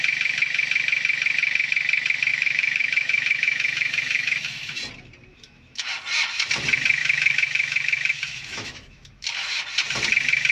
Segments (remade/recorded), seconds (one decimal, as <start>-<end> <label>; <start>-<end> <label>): 0.0-2.3 recorded; 2.3-4.8 remade; 4.8-5.3 recorded; 5.3-5.9 remade; 5.9-7.0 recorded; 7.0-9.6 remade; 9.6-10.5 recorded